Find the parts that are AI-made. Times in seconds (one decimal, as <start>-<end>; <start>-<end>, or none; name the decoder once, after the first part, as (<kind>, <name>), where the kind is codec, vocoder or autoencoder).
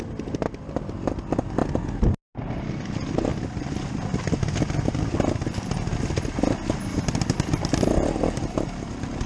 none